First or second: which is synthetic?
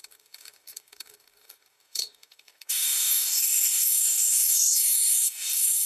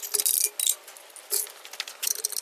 first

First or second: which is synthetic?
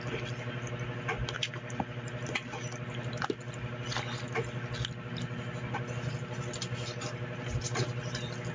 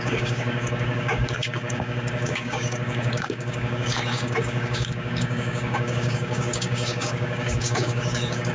second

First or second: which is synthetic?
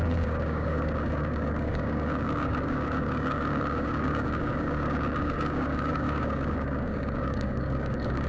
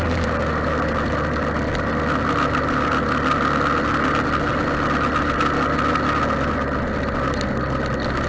first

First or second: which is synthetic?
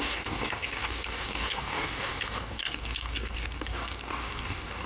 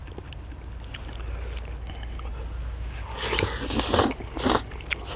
first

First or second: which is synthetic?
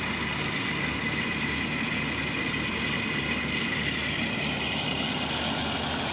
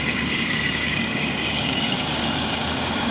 second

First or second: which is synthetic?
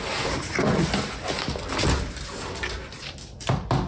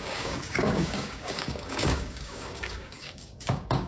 second